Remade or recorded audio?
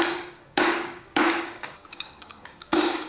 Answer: remade